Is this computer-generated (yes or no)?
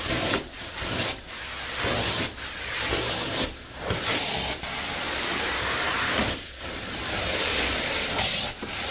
yes